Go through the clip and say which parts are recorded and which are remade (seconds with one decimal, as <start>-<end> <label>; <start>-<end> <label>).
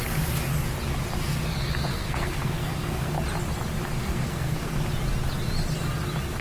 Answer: 0.0-1.9 recorded; 1.9-3.1 remade; 3.1-4.0 recorded; 4.0-4.8 remade; 4.8-6.4 recorded